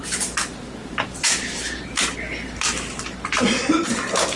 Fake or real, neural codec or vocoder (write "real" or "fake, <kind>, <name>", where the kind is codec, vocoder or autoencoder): fake, vocoder, BigVGAN v2